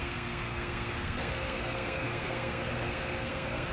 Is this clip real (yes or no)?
no